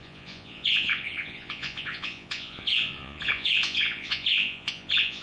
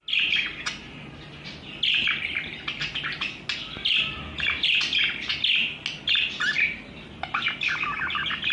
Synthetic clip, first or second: first